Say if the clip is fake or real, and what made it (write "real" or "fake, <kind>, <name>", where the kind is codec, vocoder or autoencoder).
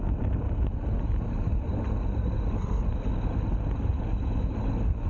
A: real